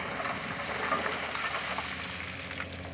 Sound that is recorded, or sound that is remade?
recorded